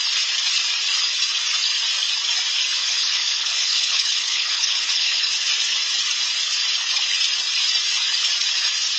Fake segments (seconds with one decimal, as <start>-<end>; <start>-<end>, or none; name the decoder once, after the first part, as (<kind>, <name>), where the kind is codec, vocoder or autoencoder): 2.8-5.3 (codec, HILCodec)